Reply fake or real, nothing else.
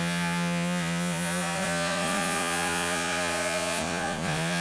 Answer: fake